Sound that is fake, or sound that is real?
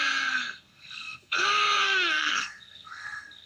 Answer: fake